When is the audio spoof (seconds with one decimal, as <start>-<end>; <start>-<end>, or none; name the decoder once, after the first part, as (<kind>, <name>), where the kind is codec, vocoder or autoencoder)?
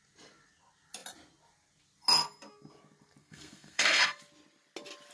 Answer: 3.2-4.2 (codec, SNAC)